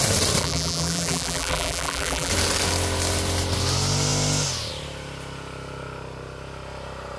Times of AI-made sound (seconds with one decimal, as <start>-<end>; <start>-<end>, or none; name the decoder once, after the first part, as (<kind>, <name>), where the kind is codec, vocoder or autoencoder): 0.4-2.3 (vocoder, BigVGAN v2)